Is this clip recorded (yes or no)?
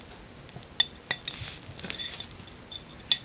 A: yes